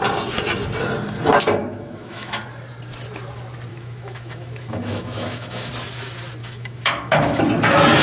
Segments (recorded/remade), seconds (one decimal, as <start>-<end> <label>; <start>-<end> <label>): 0.0-1.6 recorded; 1.6-2.4 remade; 2.4-3.7 recorded; 3.7-5.7 remade; 5.7-6.4 recorded; 6.4-7.4 remade; 7.4-8.0 recorded